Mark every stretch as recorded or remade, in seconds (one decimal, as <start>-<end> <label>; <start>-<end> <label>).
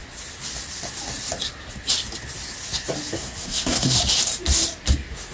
0.0-3.1 recorded; 3.1-4.0 remade; 4.0-5.3 recorded